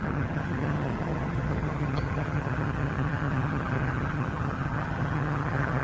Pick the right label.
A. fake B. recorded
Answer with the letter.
A